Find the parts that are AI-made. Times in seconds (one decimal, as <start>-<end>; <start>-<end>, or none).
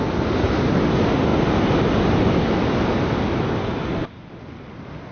none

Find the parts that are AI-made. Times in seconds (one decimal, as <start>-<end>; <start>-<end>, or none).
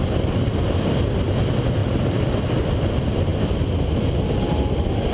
none